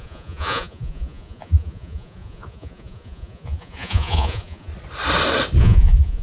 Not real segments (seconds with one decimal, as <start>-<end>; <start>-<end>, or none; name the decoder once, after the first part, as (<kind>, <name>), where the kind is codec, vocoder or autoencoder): 0.0-4.7 (vocoder, Vocos); 5.6-6.2